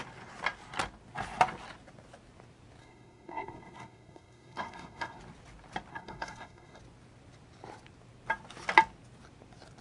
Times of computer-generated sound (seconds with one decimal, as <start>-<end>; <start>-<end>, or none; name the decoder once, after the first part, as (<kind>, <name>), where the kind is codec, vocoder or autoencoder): 2.8-5.2 (codec, SNAC); 5.9-6.8